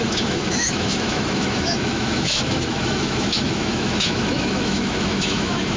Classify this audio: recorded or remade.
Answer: remade